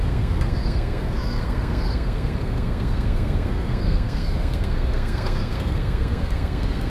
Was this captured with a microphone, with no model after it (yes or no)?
no